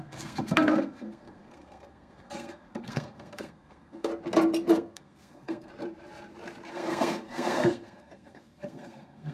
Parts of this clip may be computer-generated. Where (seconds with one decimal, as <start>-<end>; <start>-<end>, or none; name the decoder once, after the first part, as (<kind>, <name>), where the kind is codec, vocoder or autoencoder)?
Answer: 0.0-4.1 (codec, SNAC); 4.7-5.7; 6.7-9.3